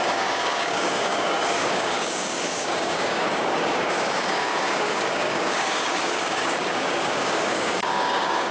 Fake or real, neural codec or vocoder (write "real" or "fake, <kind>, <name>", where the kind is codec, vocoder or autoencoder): fake, codec, DAC